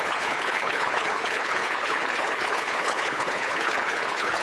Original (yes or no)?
no